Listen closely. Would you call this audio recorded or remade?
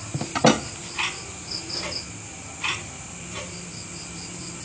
recorded